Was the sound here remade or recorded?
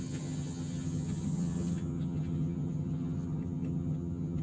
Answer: remade